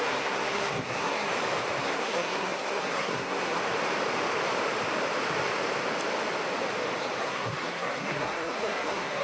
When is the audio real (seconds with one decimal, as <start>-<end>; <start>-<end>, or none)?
1.3-1.8; 3.6-7.2